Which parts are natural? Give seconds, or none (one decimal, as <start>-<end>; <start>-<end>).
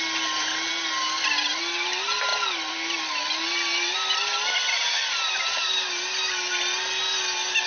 0.7-1.2